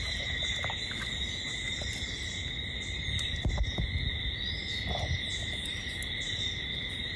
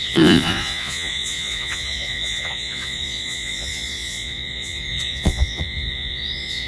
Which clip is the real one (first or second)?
first